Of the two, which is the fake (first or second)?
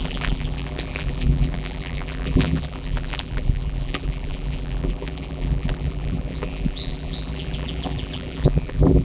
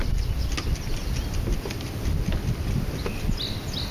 first